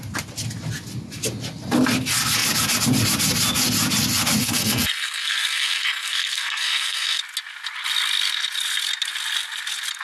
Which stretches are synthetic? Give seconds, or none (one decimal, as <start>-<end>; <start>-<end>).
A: 4.4-7.2